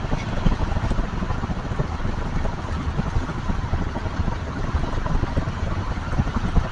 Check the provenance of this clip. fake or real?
real